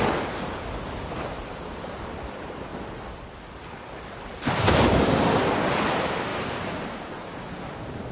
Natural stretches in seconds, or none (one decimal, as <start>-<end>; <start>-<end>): 0.0-8.1